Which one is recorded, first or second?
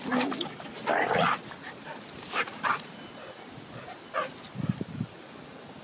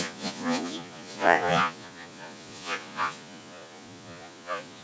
first